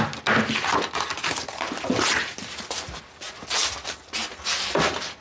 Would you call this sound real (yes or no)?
yes